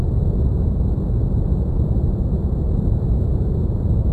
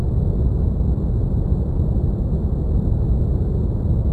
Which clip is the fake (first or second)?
first